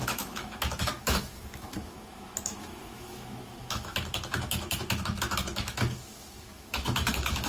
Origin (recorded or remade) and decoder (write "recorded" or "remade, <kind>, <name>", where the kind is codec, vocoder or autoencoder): remade, autoencoder, DAC-VAE